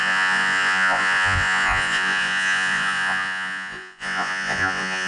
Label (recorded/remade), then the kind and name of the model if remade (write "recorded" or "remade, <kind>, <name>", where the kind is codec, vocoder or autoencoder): remade, vocoder, Vocos